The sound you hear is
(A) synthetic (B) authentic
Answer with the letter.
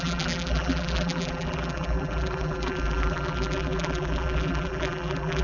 A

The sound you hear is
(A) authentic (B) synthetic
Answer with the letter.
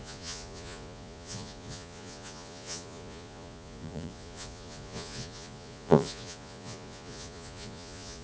B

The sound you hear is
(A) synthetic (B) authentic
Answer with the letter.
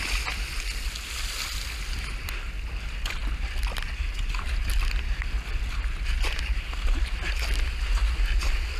B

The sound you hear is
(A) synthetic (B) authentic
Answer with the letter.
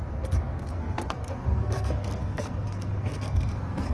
A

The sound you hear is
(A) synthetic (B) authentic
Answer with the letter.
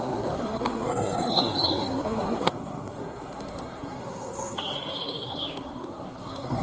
A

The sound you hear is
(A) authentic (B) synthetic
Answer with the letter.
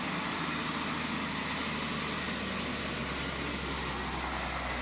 A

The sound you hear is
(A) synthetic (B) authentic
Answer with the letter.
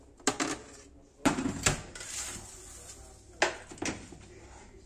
B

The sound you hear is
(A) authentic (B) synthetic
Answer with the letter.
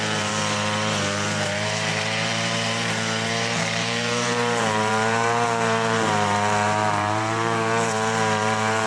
B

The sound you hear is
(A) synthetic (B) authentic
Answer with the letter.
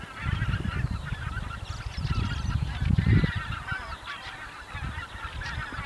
B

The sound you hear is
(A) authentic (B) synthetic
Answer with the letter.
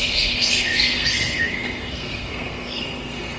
B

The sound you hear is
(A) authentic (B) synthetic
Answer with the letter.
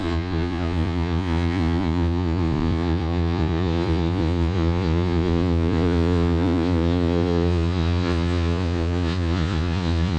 B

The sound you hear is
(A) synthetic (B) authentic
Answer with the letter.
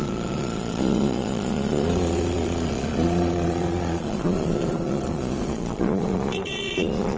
A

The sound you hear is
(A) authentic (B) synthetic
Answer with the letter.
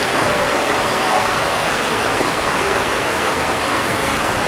B